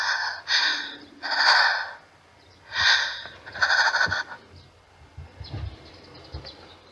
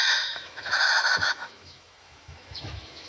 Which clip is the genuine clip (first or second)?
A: first